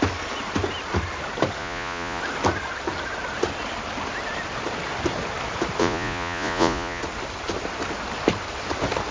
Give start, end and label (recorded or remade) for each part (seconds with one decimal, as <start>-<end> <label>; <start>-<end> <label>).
0.0-1.6 recorded; 1.6-2.2 remade; 2.2-5.8 recorded; 5.8-7.0 remade; 7.0-9.1 recorded

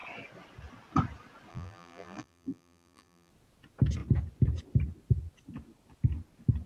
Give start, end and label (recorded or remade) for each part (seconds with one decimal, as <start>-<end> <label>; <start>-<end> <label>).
0.0-1.5 recorded; 1.5-3.3 remade; 3.3-6.7 recorded